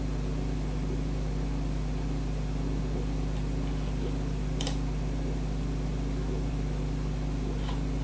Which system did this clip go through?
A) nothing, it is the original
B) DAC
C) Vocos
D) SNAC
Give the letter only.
A